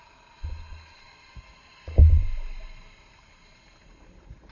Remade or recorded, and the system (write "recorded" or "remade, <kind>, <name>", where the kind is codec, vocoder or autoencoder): recorded